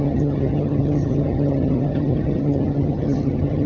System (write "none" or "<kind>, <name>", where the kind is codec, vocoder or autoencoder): vocoder, HiFi-GAN